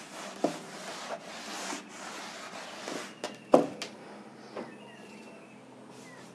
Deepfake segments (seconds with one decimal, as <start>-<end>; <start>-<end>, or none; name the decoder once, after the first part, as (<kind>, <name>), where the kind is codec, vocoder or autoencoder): none